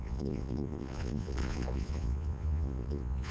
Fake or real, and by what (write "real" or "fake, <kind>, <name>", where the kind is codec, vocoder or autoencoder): fake, vocoder, Vocos